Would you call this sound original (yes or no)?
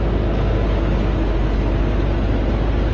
yes